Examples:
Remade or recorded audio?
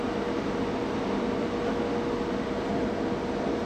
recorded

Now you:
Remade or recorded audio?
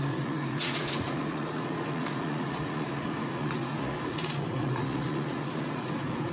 remade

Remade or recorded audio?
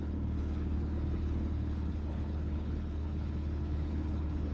remade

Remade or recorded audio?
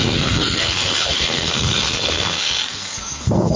remade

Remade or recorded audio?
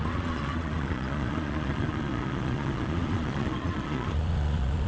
remade